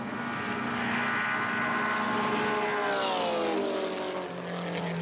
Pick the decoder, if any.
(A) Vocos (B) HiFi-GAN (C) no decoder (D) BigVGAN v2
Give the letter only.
C